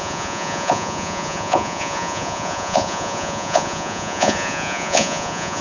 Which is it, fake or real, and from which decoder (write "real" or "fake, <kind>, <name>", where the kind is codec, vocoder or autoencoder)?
fake, vocoder, Vocos